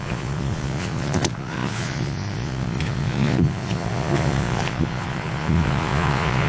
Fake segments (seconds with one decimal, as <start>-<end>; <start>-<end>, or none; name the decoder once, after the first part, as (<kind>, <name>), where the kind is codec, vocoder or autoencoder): 0.0-6.5 (vocoder, Vocos)